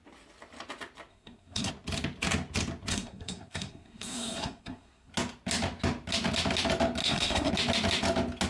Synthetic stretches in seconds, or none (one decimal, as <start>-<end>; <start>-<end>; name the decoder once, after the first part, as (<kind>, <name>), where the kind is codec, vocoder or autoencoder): 1.1-1.7 (codec, SNAC); 2.9-5.1; 7.0-7.5